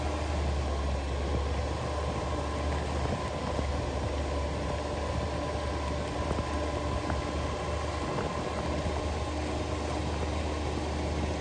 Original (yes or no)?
yes